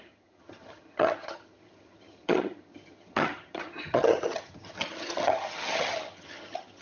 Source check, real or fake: fake